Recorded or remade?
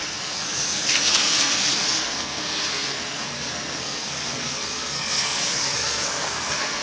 remade